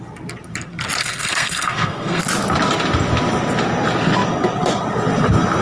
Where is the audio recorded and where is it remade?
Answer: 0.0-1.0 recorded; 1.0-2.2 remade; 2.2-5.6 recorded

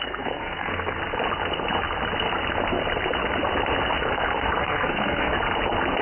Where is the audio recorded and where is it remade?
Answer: 0.0-1.0 remade; 1.0-4.6 recorded; 4.6-5.3 remade; 5.3-6.0 recorded

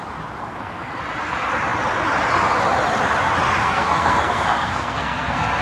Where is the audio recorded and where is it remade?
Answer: 0.0-0.4 recorded; 0.4-1.0 remade; 1.0-3.6 recorded; 3.6-5.6 remade

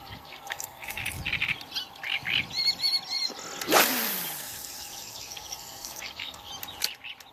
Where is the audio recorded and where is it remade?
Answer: 0.0-1.0 remade; 1.0-4.4 recorded; 4.4-6.5 remade; 6.5-7.3 recorded